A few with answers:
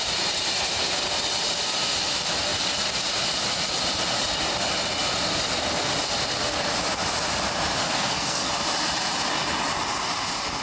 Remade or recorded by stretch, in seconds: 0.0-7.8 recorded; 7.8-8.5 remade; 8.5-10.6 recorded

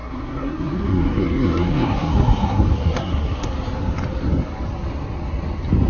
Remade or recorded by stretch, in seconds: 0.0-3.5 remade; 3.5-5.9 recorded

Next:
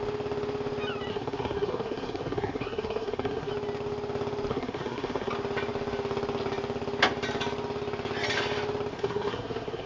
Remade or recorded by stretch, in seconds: 0.0-1.1 recorded; 1.1-3.5 remade; 3.5-4.5 recorded; 4.5-5.3 remade; 5.3-8.9 recorded; 8.9-9.9 remade

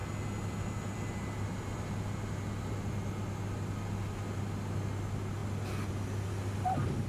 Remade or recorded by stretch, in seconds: 0.0-7.1 recorded

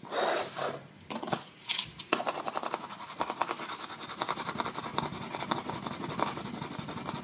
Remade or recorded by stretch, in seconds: 0.0-7.2 recorded